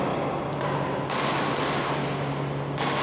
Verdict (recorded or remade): recorded